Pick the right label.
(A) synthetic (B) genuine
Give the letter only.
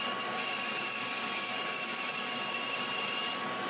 B